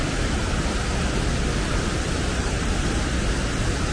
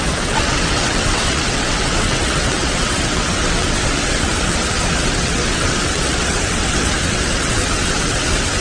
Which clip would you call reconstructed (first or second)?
second